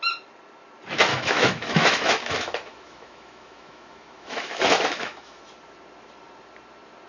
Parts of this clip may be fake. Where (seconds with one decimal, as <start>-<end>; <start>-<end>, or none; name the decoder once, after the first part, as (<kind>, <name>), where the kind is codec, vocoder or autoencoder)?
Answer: 1.1-5.4 (autoencoder, DAC-VAE)